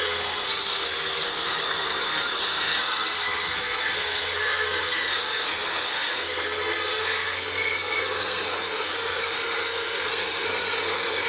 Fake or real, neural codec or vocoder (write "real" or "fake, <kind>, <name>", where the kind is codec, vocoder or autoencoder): fake, codec, SNAC